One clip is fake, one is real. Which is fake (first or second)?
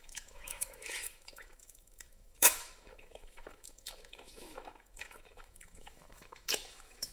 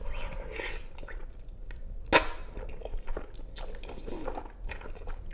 first